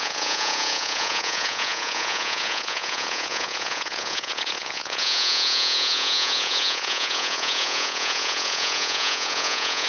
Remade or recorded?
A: remade